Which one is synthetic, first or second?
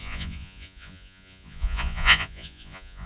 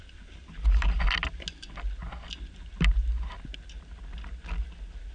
first